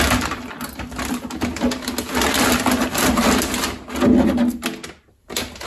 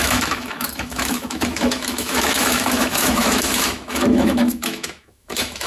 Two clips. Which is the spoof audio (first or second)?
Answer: second